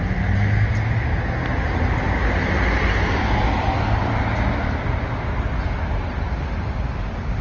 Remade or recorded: recorded